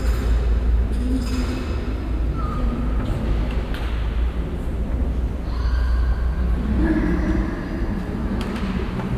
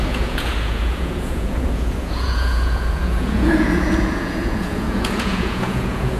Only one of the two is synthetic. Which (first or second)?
second